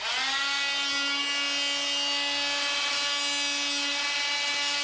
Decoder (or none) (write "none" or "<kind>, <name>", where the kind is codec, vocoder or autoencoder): none